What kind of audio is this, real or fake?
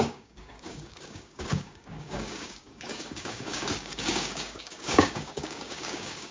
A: fake